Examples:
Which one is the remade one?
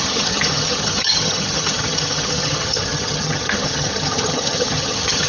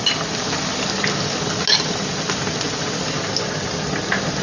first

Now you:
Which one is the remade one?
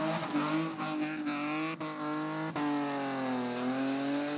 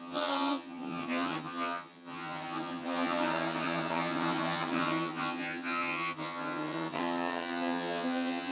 second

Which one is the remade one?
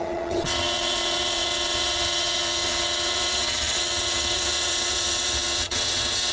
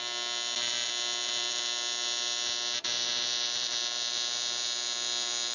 first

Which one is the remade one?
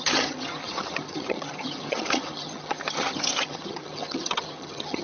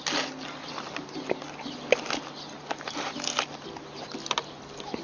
first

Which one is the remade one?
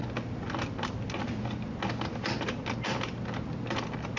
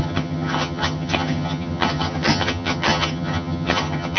second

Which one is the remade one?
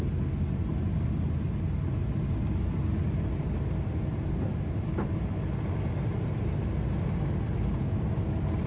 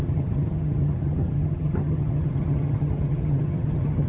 second